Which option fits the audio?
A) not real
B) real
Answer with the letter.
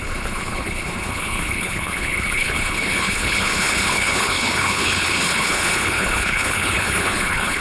A